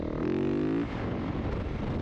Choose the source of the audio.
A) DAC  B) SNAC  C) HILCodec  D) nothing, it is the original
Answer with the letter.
D